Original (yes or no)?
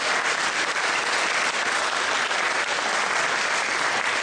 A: yes